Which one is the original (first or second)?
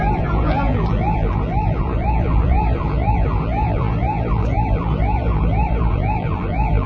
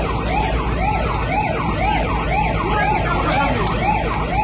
second